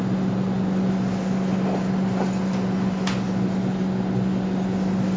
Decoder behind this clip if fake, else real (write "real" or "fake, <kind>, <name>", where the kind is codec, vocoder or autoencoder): real